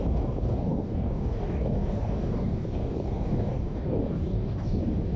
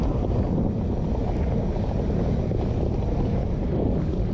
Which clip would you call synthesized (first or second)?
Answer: first